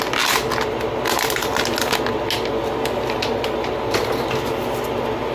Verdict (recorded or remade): recorded